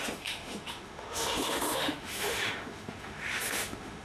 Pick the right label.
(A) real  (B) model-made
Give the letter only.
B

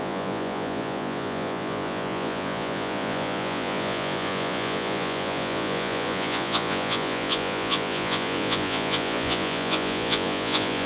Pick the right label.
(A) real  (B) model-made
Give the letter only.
B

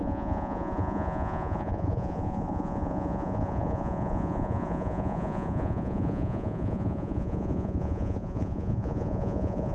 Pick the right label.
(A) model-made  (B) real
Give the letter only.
A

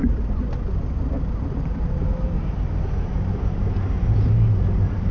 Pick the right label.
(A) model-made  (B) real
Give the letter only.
B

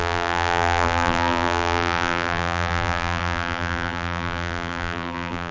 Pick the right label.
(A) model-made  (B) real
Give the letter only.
A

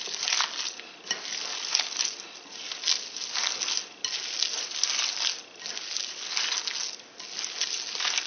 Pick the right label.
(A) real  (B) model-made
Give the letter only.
A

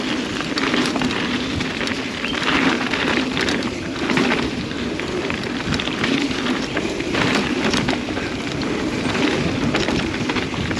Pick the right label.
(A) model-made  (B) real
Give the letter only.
A